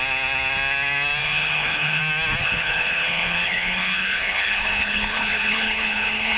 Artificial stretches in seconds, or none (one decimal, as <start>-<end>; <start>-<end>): 1.2-2.0; 2.4-6.4